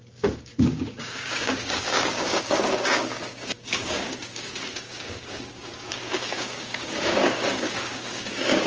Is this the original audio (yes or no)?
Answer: no